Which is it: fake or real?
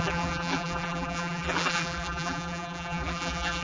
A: fake